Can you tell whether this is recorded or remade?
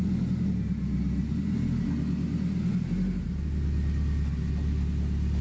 recorded